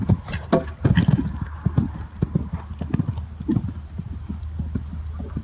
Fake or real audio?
real